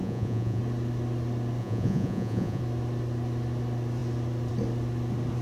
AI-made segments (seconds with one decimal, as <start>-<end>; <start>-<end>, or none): 0.0-0.6; 1.6-2.6